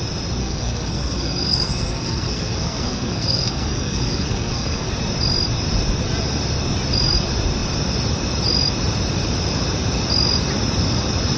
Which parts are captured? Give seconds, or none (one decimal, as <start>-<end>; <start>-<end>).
0.0-0.4; 4.9-11.4